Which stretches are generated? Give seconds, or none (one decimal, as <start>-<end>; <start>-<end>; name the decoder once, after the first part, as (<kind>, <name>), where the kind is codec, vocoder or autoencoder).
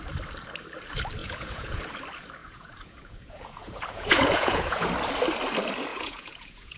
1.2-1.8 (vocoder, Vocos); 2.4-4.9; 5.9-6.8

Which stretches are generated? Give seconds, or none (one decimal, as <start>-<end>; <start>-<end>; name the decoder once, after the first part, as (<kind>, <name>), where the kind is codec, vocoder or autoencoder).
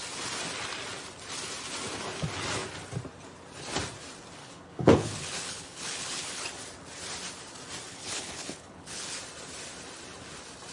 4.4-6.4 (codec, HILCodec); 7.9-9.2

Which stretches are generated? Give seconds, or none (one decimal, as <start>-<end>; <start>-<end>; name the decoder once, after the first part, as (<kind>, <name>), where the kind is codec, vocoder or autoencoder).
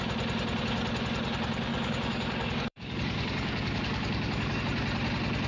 1.7-4.6 (codec, DAC)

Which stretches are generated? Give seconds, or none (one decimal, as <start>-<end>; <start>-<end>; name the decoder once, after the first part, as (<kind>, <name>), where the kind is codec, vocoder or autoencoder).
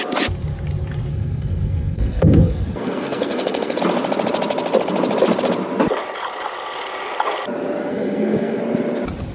1.1-3.8 (codec, SNAC); 7.9-8.6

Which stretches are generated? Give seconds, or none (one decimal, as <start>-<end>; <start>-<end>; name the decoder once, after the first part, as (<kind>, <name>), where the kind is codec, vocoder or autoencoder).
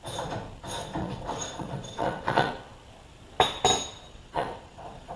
1.0-2.5 (vocoder, WaveNeXt); 4.1-5.2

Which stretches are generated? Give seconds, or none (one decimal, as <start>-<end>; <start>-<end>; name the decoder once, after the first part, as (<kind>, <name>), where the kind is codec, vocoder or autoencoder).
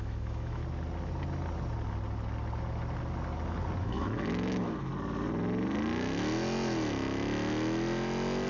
0.0-0.6 (autoencoder, DAC-VAE); 3.8-4.9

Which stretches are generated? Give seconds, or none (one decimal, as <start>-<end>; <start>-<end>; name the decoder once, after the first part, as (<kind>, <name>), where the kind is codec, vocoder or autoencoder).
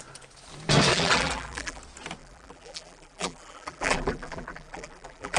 0.9-1.8 (vocoder, BigVGAN v2); 2.2-5.4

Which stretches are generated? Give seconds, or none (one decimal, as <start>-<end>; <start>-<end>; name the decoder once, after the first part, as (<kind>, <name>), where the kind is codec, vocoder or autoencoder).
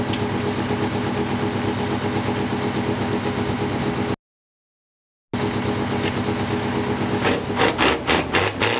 none